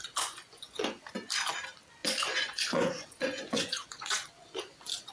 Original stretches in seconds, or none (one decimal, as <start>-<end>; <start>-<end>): 1.1-2.0